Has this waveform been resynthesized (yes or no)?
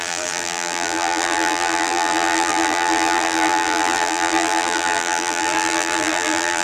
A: yes